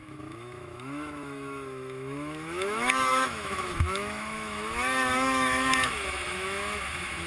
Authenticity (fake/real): fake